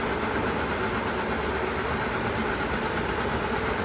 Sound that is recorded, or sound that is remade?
recorded